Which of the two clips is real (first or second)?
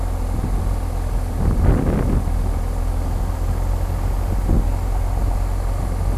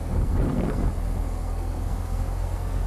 first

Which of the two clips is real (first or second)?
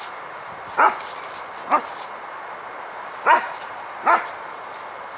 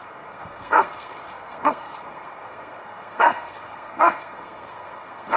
first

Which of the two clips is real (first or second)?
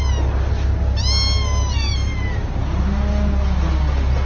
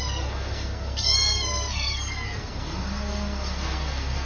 first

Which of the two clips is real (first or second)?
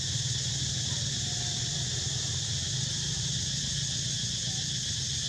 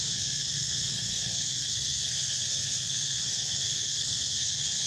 first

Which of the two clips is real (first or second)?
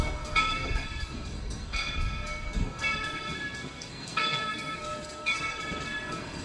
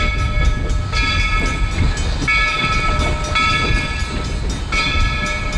second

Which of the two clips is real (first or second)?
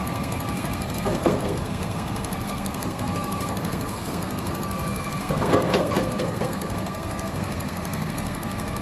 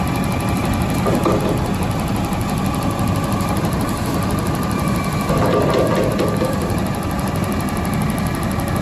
second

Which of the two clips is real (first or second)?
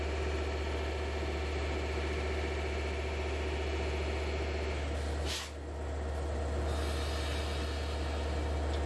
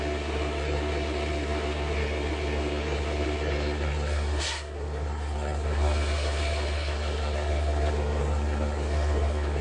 first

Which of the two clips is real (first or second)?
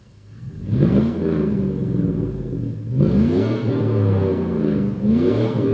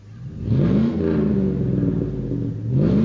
second